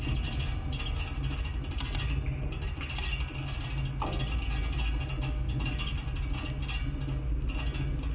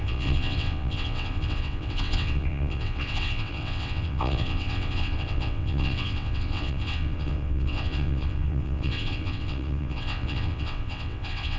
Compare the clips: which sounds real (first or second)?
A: first